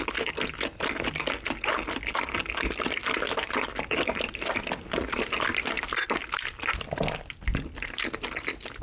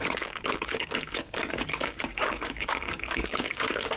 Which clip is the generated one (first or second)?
second